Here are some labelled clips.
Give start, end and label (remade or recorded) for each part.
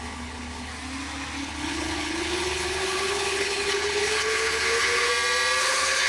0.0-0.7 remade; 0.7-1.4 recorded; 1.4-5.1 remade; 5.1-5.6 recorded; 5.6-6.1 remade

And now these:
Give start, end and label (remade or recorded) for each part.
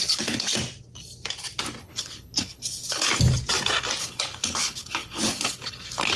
0.0-0.5 remade; 0.5-1.8 recorded; 1.8-3.1 remade; 3.1-4.0 recorded; 4.0-6.2 remade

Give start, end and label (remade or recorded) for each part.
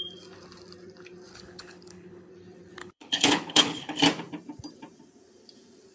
0.0-1.3 recorded; 1.3-2.3 remade; 2.3-2.8 recorded; 2.8-4.0 remade; 4.0-5.9 recorded